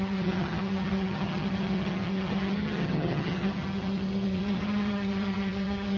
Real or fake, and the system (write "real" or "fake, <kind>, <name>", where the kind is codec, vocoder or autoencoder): fake, vocoder, HiFi-GAN